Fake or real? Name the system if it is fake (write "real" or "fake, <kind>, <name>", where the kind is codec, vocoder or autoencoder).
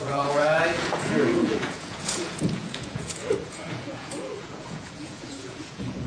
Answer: fake, vocoder, Vocos